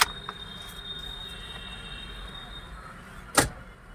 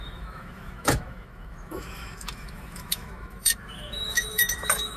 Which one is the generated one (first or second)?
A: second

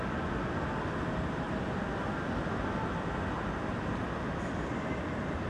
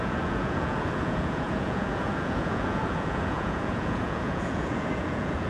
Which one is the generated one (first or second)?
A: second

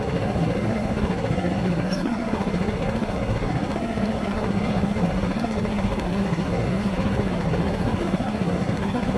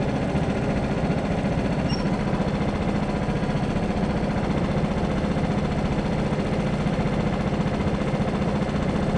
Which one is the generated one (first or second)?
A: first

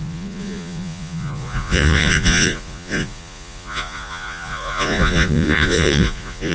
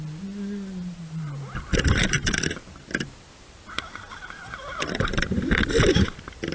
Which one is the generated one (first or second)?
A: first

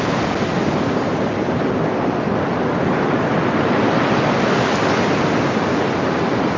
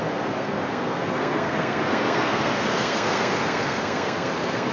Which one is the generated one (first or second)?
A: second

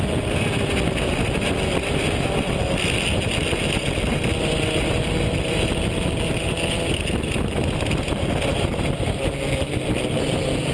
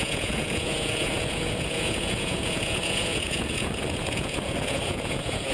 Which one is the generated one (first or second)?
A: second